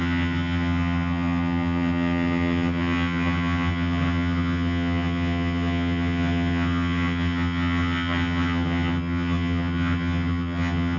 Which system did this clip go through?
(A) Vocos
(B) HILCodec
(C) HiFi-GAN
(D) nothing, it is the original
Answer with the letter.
C